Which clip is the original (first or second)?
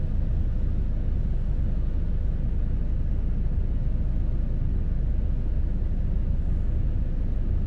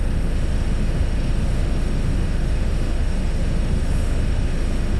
first